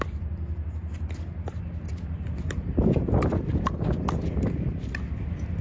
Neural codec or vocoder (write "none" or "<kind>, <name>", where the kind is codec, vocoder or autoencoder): none